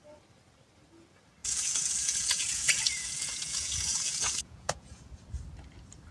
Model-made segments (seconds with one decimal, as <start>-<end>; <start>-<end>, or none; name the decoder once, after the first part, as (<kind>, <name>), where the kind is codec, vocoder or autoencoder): 1.4-5.1 (vocoder, Vocos)